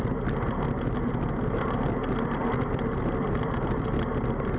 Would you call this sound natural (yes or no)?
yes